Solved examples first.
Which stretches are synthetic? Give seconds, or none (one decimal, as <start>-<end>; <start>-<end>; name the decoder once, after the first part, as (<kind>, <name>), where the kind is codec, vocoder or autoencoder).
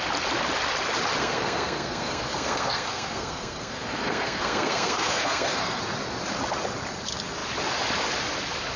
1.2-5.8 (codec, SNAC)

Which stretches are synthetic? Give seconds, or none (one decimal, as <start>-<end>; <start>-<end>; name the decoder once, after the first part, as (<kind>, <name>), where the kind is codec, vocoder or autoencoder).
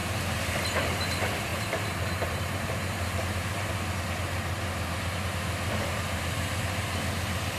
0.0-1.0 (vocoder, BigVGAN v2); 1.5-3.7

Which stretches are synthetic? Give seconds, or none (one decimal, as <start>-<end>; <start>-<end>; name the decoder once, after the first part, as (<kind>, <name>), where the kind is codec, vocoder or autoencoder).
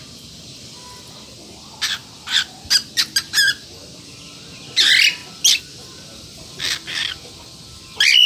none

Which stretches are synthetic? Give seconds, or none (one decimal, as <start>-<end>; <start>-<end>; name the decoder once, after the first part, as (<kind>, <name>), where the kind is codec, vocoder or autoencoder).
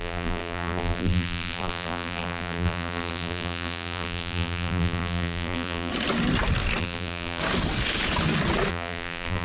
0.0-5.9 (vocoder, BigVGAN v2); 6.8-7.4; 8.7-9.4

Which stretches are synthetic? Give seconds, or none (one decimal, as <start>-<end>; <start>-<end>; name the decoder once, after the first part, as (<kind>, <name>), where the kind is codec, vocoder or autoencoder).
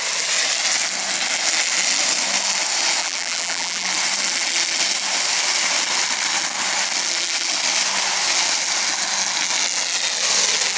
3.0-3.9 (vocoder, BigVGAN v2)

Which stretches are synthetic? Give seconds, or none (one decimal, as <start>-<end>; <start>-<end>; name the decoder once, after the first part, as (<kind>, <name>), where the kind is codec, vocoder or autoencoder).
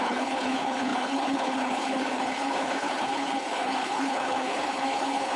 0.0-5.4 (codec, HILCodec)